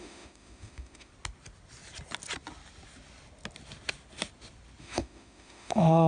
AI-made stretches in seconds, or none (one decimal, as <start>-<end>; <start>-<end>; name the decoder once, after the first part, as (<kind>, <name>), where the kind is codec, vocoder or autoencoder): 0.0-1.1 (autoencoder, DAC-VAE); 4.8-6.1